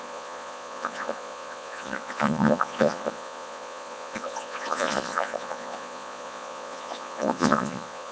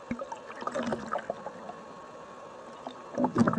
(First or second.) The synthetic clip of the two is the first